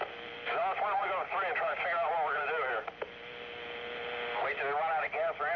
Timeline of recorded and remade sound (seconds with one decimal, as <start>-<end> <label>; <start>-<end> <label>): 0.0-5.6 recorded